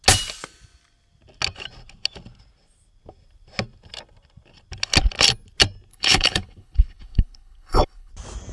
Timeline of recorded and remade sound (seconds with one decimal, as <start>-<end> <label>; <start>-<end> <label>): 0.0-5.9 recorded; 5.9-8.1 remade; 8.1-8.5 recorded